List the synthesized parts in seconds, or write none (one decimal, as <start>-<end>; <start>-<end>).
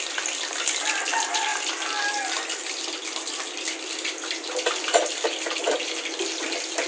none